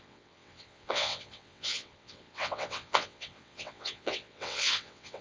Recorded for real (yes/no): no